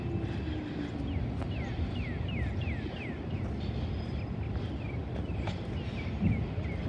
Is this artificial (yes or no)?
no